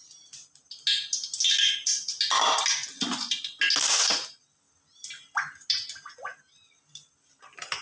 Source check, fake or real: real